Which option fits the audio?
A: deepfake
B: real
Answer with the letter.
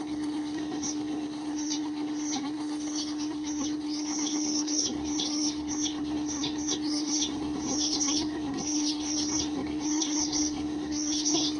A